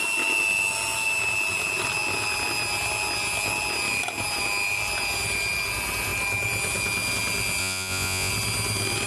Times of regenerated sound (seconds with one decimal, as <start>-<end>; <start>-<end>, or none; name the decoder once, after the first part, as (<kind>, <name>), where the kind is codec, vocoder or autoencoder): 7.6-8.3 (vocoder, Vocos)